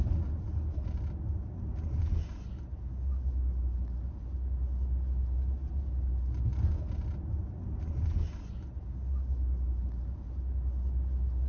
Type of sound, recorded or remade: recorded